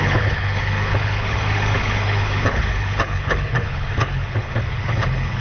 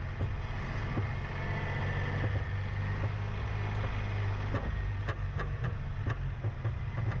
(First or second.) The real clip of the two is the second